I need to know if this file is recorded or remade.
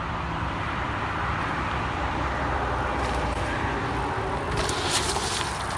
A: recorded